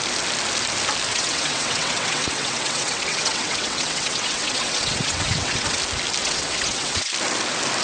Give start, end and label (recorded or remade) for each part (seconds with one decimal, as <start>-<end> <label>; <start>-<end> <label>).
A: 0.0-1.1 recorded; 1.1-5.8 remade; 5.8-6.2 recorded; 6.2-7.1 remade; 7.1-7.8 recorded